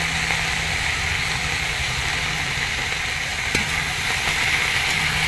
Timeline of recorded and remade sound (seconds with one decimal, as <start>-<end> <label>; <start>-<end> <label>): 0.0-5.3 recorded